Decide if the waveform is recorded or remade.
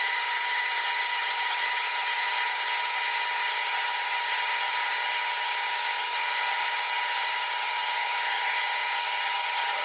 remade